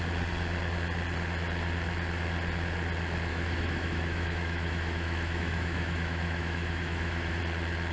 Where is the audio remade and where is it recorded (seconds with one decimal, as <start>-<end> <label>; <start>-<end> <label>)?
0.0-3.3 recorded; 3.3-7.4 remade; 7.4-7.9 recorded